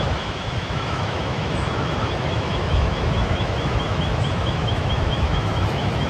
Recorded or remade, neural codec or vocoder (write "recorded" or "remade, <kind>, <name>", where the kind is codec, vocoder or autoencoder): remade, autoencoder, DAC-VAE